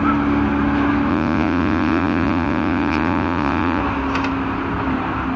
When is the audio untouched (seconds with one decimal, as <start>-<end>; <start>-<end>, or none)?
0.0-1.1; 3.8-5.4